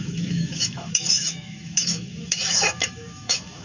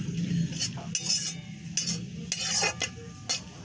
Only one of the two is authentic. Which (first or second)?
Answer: second